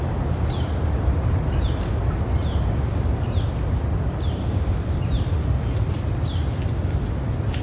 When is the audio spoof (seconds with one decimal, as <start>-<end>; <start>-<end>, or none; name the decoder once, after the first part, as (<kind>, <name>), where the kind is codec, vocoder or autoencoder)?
4.4-5.0 (autoencoder, DAC-VAE)